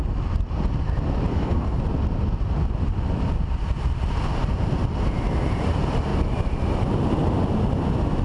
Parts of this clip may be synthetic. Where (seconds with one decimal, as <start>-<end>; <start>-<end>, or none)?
1.3-1.8